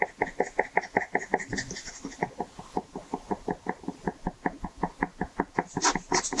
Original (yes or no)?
yes